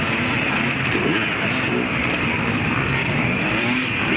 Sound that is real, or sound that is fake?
fake